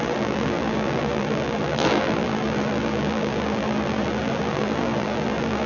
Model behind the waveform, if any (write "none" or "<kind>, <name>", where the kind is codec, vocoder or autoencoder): vocoder, BigVGAN v2